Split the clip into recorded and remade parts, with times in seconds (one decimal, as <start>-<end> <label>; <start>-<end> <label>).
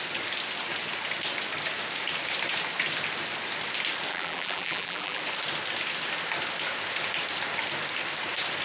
0.0-4.1 recorded; 4.1-5.2 remade; 5.2-8.6 recorded